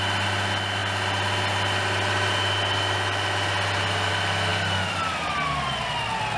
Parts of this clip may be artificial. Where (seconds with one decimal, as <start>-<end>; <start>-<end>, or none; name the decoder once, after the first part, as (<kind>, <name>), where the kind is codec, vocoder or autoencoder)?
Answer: none